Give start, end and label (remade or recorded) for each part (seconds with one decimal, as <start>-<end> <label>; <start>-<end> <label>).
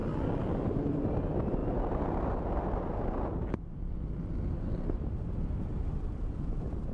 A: 0.0-1.6 remade; 1.6-5.5 recorded; 5.5-6.9 remade